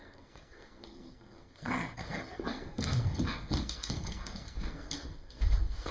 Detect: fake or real fake